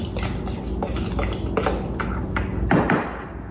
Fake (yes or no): no